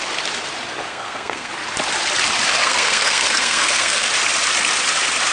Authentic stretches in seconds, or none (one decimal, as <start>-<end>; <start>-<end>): 0.0-0.9; 1.5-2.6; 4.1-5.3

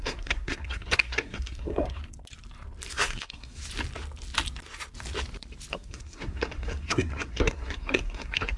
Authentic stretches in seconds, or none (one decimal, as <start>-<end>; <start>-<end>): 2.0-2.9; 3.6-5.7

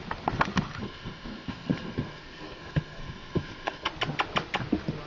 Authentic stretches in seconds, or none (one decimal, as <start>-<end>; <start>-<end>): 0.0-0.8; 3.9-5.1

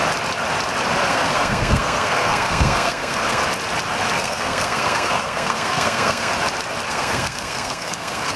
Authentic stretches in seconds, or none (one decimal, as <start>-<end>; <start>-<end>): 0.0-1.1; 3.4-4.1; 6.3-6.9

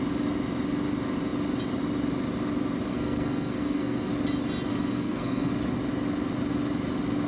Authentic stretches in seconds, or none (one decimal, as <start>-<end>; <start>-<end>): 0.0-2.9; 4.1-4.7; 5.5-7.3

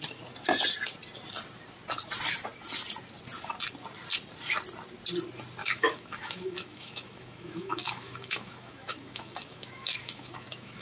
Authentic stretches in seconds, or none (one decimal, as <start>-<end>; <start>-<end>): 0.0-5.6